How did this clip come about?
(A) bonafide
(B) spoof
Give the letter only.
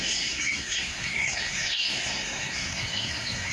B